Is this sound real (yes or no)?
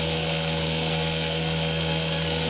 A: no